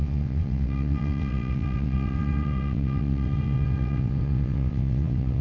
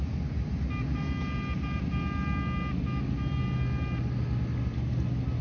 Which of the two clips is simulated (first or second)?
first